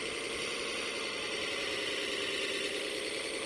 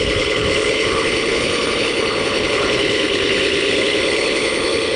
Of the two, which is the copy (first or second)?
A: second